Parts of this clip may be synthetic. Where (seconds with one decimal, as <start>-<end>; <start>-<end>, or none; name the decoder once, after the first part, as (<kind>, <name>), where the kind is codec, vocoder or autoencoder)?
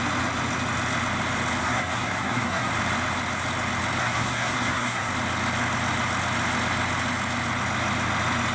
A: 1.6-2.7 (codec, SNAC); 4.0-5.1